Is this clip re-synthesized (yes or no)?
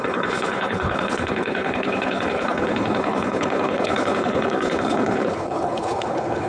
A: yes